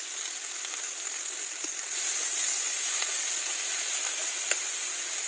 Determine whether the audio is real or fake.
real